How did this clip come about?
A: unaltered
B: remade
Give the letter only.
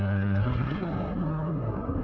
B